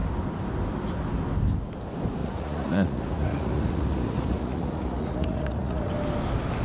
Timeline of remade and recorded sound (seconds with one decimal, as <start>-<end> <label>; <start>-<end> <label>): 0.0-2.2 recorded; 2.2-5.9 remade; 5.9-6.6 recorded